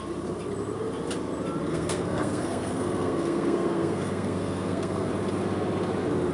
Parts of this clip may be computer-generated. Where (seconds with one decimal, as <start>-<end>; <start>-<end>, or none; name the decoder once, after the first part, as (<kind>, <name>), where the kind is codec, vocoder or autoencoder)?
1.7-5.1 (codec, SNAC)